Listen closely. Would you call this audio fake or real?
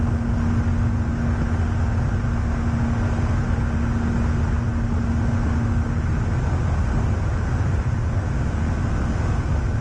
real